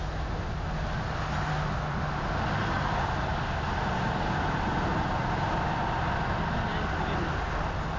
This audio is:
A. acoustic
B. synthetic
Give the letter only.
A